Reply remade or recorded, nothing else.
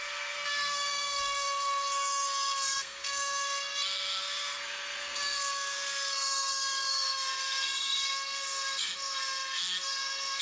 remade